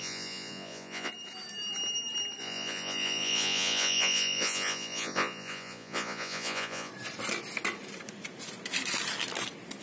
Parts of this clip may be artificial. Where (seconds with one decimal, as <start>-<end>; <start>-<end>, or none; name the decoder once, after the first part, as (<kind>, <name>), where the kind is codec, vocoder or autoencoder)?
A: 0.0-1.1 (vocoder, Vocos); 2.4-6.9